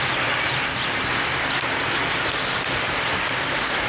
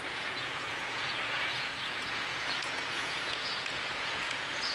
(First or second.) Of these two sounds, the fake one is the second